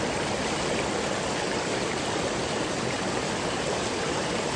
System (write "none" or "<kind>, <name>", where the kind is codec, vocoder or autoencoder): none